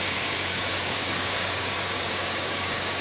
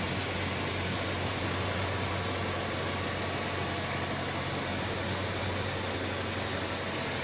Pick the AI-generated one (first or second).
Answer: first